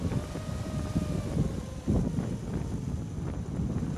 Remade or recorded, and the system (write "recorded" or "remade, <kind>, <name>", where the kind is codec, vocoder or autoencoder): recorded